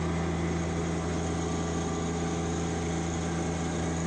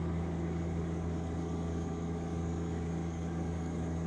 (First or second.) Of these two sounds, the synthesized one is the second